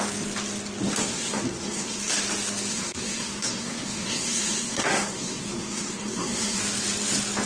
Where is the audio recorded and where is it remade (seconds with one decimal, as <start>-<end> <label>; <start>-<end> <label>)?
0.0-1.0 recorded; 1.0-2.1 remade; 2.1-2.7 recorded; 2.7-6.6 remade; 6.6-7.5 recorded